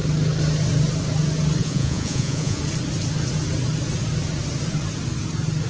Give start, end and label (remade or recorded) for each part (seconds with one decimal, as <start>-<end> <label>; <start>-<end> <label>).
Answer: 0.0-1.6 recorded; 1.6-2.6 remade; 2.6-5.7 recorded